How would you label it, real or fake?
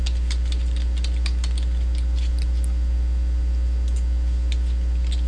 real